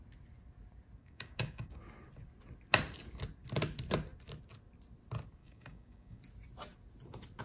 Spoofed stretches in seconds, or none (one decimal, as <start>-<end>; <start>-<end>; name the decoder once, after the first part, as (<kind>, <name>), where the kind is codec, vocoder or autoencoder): 1.0-1.8 (codec, DAC); 5.4-6.2

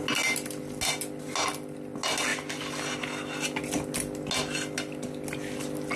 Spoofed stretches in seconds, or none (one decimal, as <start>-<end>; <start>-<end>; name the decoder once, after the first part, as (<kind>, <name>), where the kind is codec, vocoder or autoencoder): none

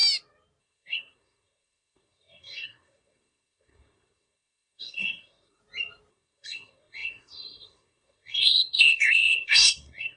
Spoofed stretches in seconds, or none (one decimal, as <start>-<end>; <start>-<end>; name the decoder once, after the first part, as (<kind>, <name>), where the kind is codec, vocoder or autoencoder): 0.6-5.6 (codec, SNAC); 6.1-10.2

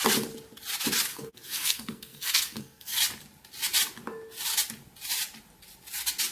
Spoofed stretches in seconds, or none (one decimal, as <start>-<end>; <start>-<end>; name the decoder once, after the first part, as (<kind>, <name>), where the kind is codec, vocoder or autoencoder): 1.1-3.0 (codec, SNAC)

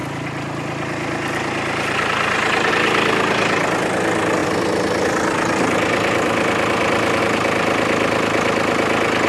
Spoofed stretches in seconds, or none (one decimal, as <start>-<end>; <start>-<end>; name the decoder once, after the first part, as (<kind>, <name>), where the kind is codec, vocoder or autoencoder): 4.4-7.2 (vocoder, BigVGAN v2)